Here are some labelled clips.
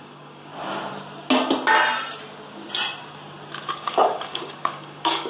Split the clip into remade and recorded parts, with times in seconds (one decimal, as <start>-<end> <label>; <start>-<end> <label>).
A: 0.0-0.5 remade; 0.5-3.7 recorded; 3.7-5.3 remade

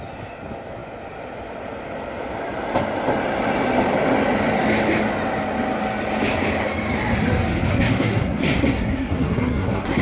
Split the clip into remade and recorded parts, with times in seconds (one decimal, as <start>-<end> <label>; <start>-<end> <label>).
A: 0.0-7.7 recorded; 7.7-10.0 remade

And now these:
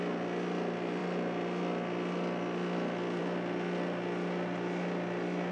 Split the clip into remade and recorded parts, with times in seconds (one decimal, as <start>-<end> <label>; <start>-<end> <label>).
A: 0.0-5.5 recorded